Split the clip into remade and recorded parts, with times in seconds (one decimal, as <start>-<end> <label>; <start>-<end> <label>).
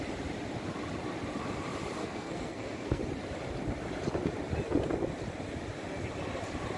0.0-2.0 recorded; 2.0-3.0 remade; 3.0-6.8 recorded